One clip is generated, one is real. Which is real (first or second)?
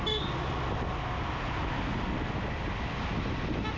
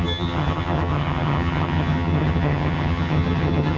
first